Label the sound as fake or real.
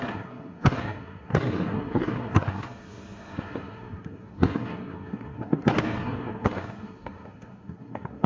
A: fake